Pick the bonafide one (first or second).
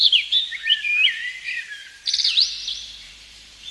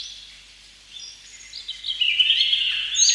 second